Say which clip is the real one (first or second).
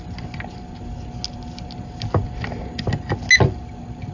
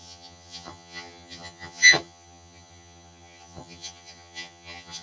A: first